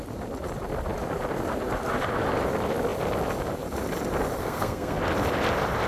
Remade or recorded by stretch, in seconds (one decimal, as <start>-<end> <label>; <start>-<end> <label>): 0.0-4.4 recorded; 4.4-5.0 remade; 5.0-5.9 recorded